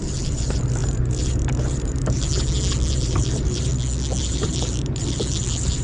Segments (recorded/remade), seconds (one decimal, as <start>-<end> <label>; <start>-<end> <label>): 0.0-2.3 remade; 2.3-2.9 recorded; 2.9-3.7 remade; 3.7-4.2 recorded; 4.2-5.8 remade